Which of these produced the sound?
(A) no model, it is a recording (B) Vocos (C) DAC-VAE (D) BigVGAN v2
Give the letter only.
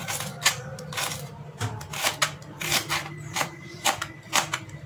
D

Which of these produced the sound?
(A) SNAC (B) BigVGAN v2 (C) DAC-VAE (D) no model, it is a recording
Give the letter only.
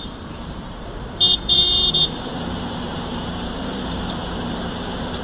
B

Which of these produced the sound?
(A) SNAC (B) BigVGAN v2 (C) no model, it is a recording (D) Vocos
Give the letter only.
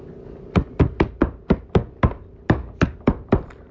C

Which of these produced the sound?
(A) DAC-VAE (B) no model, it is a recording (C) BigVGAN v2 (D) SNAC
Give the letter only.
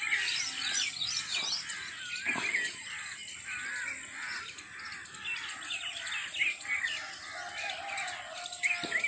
B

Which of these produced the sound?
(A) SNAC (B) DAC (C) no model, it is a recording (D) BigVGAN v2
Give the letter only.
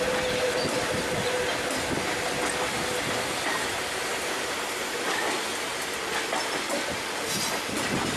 C